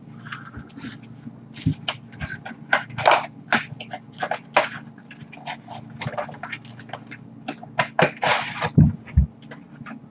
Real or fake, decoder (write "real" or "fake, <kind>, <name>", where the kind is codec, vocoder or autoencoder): real